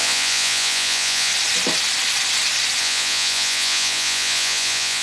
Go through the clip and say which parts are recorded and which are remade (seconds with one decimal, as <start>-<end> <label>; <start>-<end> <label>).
0.0-1.3 remade; 1.3-2.8 recorded; 2.8-5.0 remade

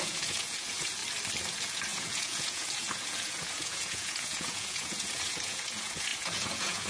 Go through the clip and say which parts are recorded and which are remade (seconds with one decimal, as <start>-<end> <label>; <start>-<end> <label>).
0.0-1.0 remade; 1.0-1.5 recorded; 1.5-6.9 remade

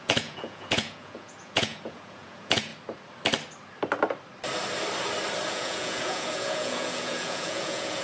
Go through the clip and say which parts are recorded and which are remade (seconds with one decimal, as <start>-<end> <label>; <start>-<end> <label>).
0.0-2.7 remade; 2.7-5.5 recorded; 5.5-8.0 remade

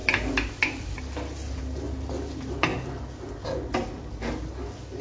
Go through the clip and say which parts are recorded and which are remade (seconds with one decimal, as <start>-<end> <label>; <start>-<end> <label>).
0.0-5.0 recorded

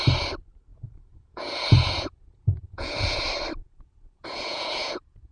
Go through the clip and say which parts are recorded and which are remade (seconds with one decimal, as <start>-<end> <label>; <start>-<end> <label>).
0.0-0.7 recorded; 0.7-3.2 remade; 3.2-3.6 recorded; 3.6-5.3 remade